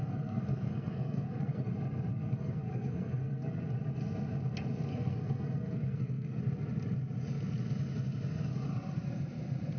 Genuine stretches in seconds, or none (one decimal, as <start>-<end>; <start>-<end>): 1.7-2.1; 3.6-4.9; 6.4-9.8